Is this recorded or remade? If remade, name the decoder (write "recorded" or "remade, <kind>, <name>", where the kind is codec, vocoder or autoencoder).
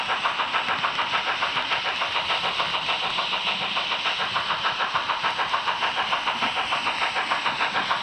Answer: recorded